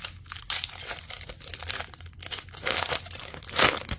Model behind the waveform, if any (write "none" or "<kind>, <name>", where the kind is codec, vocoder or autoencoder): none